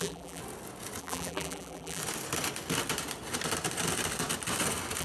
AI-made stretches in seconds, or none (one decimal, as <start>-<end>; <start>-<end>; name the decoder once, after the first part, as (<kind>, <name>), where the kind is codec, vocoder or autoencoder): 0.0-0.4 (vocoder, BigVGAN v2); 1.0-2.0